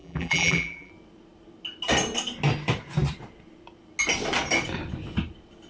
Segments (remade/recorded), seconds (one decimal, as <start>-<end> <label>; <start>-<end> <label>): 0.0-0.9 remade; 0.9-5.7 recorded